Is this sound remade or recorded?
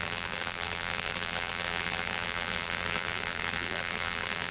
remade